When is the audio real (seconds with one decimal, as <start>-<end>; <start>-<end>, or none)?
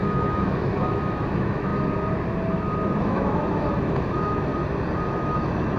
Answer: 1.7-3.0; 4.5-5.1